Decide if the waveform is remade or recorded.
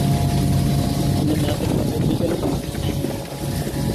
recorded